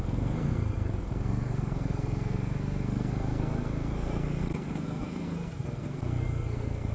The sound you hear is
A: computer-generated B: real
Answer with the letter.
A